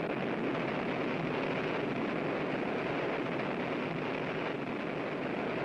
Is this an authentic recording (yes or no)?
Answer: yes